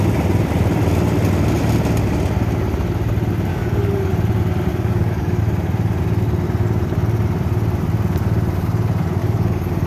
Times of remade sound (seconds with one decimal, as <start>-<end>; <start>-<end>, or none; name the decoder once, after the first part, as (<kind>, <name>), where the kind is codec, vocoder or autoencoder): 3.5-4.1 (codec, DAC); 4.7-5.4; 9.2-9.9